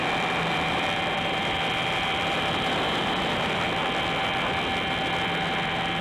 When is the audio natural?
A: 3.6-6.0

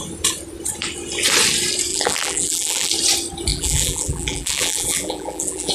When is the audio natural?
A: 0.0-1.9; 2.9-3.5

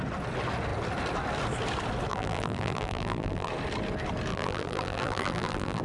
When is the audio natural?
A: 0.0-2.1; 3.5-4.3